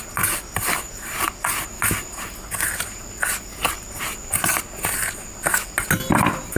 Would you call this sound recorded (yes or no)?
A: yes